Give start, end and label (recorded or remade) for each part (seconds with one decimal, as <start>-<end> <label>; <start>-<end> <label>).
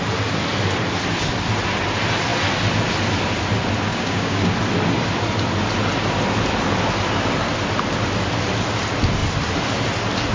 0.0-3.9 recorded; 3.9-4.5 remade; 4.5-10.3 recorded